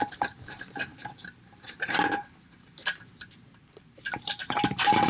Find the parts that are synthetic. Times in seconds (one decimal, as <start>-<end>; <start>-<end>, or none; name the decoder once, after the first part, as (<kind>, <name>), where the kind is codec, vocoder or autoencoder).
0.0-0.9 (vocoder, BigVGAN v2); 3.1-5.1